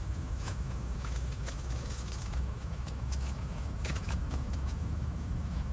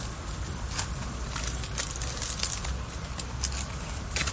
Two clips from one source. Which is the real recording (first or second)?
second